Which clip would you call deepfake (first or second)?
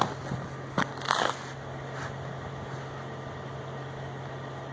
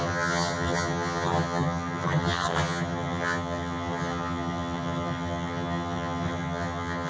second